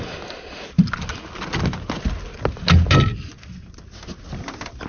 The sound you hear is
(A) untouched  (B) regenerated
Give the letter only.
A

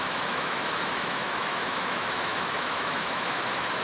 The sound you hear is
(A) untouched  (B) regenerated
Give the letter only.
B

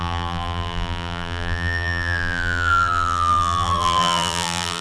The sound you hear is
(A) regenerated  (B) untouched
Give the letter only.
A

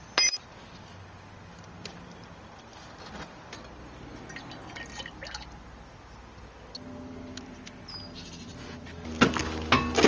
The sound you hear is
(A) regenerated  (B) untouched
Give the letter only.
B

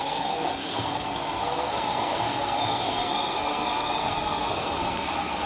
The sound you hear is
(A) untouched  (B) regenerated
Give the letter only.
B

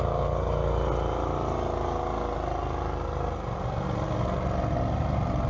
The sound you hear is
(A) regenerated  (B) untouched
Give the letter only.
B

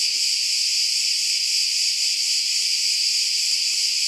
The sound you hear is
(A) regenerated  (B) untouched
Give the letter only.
B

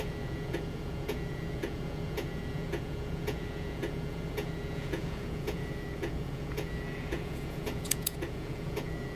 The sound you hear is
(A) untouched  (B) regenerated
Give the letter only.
B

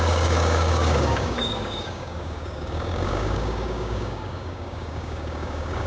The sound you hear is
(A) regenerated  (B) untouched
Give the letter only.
A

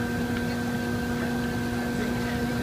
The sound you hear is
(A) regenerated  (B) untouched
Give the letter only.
B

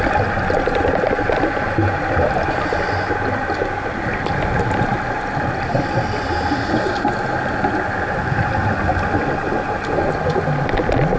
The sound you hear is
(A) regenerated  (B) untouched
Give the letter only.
B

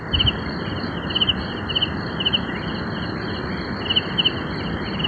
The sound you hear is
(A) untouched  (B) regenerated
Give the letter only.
A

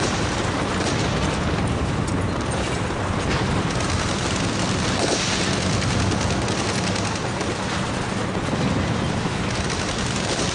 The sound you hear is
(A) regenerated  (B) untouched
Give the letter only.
B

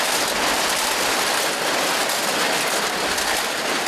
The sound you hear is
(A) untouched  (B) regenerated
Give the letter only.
A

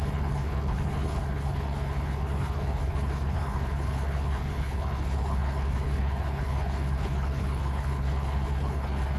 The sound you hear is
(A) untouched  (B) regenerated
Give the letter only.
B